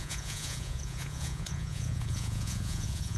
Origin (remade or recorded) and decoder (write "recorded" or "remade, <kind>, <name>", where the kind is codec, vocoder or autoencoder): remade, vocoder, Vocos